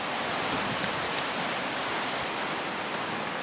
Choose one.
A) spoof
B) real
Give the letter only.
B